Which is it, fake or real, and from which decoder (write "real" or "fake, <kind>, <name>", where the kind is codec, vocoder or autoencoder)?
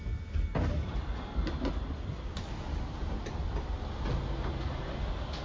real